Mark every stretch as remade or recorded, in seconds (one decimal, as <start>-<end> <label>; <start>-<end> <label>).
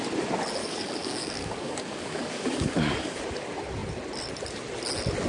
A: 0.0-0.6 recorded; 0.6-3.2 remade; 3.2-5.3 recorded